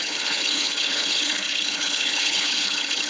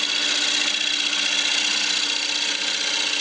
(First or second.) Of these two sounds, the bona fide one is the second